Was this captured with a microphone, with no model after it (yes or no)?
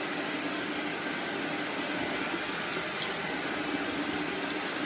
yes